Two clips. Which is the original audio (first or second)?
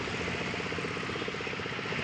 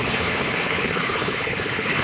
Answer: first